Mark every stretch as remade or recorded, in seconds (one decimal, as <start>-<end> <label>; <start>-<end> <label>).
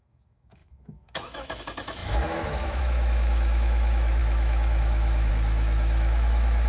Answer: 0.0-6.7 remade